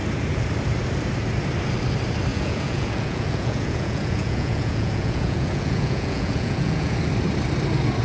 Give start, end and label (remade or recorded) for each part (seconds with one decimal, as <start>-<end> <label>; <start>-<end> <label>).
0.0-2.3 recorded; 2.3-7.1 remade; 7.1-8.0 recorded